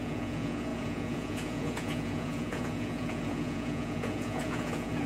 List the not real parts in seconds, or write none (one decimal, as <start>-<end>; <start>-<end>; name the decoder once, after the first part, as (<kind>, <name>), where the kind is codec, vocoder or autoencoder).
0.0-5.1 (vocoder, Vocos)